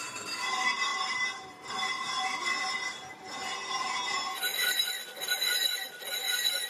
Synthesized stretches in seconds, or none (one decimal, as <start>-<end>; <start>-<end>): 4.5-6.1